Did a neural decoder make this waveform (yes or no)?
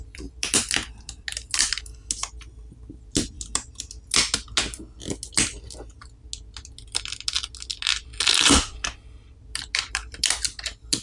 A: no